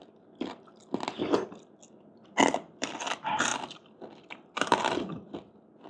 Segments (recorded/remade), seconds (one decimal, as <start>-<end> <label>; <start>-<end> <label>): 0.0-5.9 remade